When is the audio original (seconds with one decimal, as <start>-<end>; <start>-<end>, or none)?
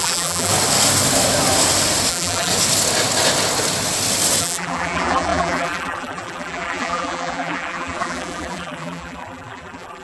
0.5-2.1; 2.5-4.4